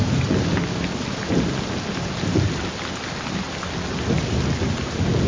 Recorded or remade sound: recorded